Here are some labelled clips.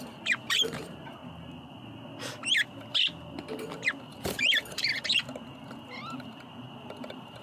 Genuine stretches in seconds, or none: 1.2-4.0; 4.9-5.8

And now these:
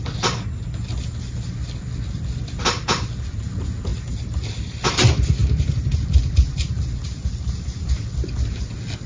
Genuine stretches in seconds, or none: 0.0-9.1

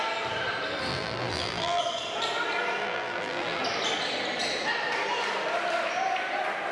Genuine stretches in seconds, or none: 0.0-0.9; 1.8-2.8; 3.6-6.7

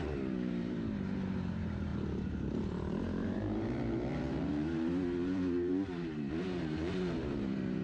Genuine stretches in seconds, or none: 1.9-2.5

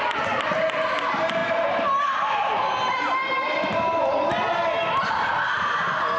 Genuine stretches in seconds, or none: 0.0-6.2

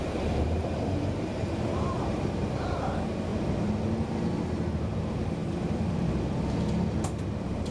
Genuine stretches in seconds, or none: 3.3-5.0; 5.4-7.2

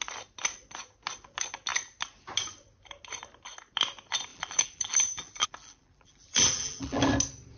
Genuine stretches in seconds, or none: 0.0-4.3; 7.1-7.6